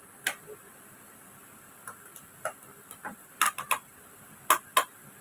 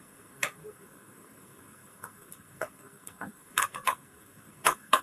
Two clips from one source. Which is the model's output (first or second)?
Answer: second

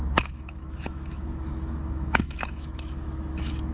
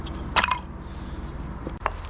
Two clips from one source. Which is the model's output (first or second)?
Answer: first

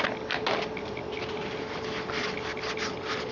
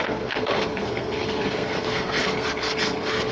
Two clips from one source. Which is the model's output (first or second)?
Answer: second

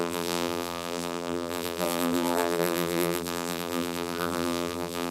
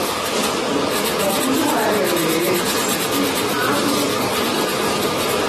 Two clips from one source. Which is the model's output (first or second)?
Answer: first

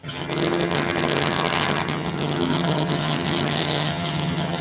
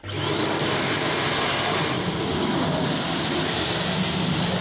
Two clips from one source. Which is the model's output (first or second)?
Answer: first